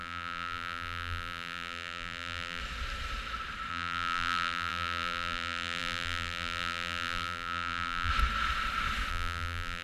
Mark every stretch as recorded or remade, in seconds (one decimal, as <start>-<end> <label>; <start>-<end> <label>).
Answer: 0.0-2.6 remade; 2.6-3.7 recorded; 3.7-8.1 remade; 8.1-9.1 recorded; 9.1-9.8 remade